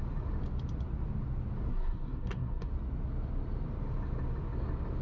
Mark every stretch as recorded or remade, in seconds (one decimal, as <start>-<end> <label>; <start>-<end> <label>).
0.0-1.7 recorded; 1.7-2.7 remade; 2.7-5.0 recorded